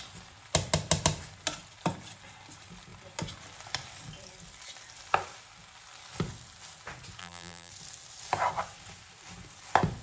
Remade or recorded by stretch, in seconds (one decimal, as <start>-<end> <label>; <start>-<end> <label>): 0.0-7.2 recorded; 7.2-7.7 remade; 7.7-10.0 recorded